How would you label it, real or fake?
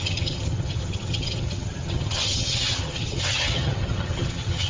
fake